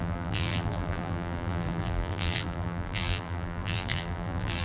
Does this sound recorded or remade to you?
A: remade